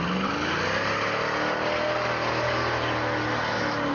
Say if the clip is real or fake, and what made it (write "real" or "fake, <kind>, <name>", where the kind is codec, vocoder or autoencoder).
real